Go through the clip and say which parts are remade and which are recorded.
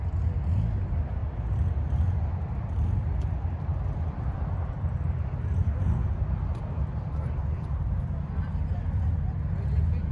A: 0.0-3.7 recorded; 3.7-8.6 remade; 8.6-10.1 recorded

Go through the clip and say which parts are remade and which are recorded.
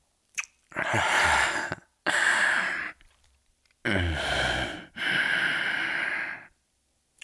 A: 0.0-4.3 remade; 4.3-7.2 recorded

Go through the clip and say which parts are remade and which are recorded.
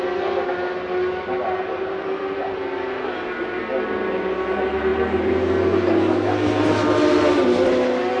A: 0.0-8.2 recorded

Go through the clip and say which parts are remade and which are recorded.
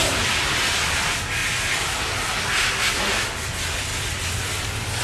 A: 0.0-3.9 recorded; 3.9-5.0 remade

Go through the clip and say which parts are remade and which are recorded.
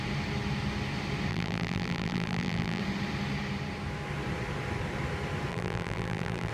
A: 0.0-1.3 recorded; 1.3-2.8 remade; 2.8-5.5 recorded; 5.5-6.5 remade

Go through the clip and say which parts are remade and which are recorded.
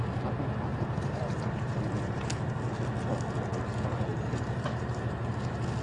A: 0.0-0.7 recorded; 0.7-2.2 remade; 2.2-4.1 recorded; 4.1-5.3 remade; 5.3-5.8 recorded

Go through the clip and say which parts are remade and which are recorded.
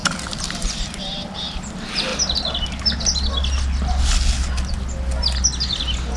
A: 0.0-1.7 remade; 1.7-6.2 recorded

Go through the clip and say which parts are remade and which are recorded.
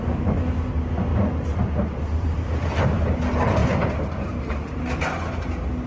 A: 0.0-1.1 recorded; 1.1-3.1 remade; 3.1-3.6 recorded; 3.6-4.8 remade; 4.8-5.9 recorded